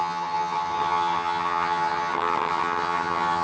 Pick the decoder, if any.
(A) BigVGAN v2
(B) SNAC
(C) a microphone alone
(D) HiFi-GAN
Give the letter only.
D